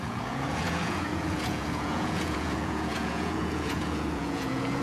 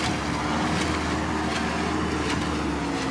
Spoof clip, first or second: first